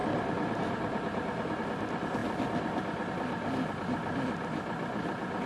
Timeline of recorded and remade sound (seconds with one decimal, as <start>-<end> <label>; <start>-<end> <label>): 0.0-5.5 recorded